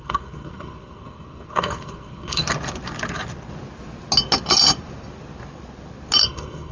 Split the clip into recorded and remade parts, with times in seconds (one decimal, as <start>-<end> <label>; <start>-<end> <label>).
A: 0.0-2.4 remade; 2.4-6.2 recorded; 6.2-6.7 remade